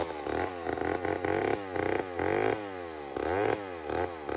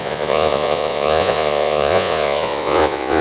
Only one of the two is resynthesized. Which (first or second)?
second